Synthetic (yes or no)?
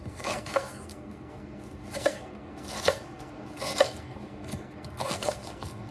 yes